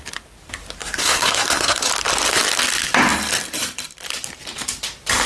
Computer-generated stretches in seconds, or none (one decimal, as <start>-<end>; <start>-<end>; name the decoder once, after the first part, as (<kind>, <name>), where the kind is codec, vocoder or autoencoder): 0.8-1.9 (codec, SNAC)